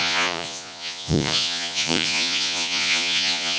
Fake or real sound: fake